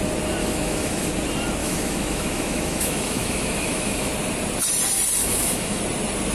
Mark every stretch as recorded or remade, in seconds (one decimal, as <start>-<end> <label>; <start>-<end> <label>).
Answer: 0.0-0.4 recorded; 0.4-1.1 remade; 1.1-1.6 recorded; 1.6-4.1 remade; 4.1-5.2 recorded; 5.2-5.8 remade; 5.8-6.3 recorded